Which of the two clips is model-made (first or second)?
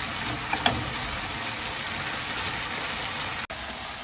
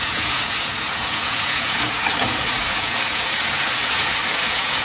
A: second